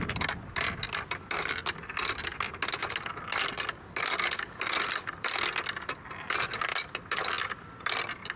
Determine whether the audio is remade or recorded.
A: recorded